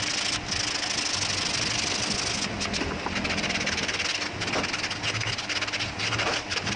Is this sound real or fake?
real